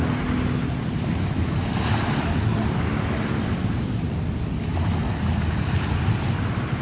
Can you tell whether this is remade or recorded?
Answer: recorded